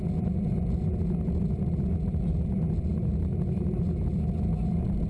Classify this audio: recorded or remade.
recorded